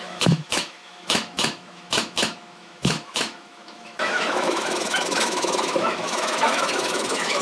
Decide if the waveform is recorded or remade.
remade